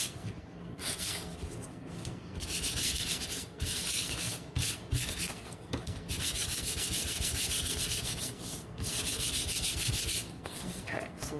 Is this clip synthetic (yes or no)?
yes